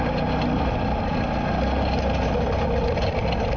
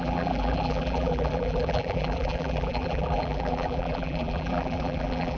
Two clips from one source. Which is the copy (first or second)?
second